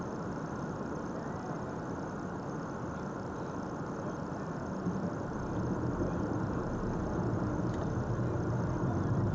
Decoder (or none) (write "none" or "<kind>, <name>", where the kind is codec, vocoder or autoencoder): none